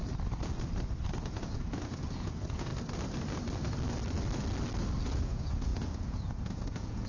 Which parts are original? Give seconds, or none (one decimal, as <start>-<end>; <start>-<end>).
0.0-1.2; 2.7-5.0